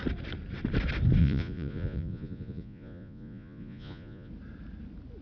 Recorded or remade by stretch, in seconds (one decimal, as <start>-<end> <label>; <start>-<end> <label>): 0.0-1.2 recorded; 1.2-4.3 remade; 4.3-5.2 recorded